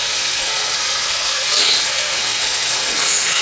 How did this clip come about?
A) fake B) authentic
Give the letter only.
A